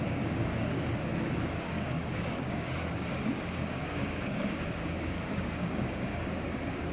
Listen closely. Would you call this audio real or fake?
fake